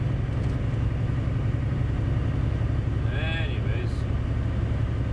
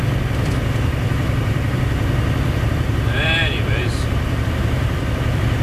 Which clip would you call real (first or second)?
first